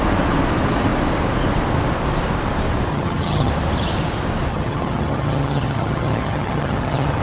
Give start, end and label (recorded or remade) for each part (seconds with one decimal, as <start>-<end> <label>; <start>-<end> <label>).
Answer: 0.0-2.9 recorded; 2.9-3.5 remade; 3.5-4.5 recorded; 4.5-7.2 remade